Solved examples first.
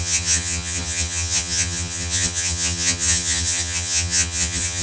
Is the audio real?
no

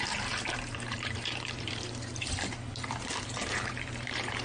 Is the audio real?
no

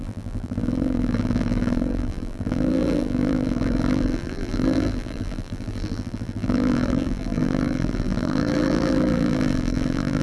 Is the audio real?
no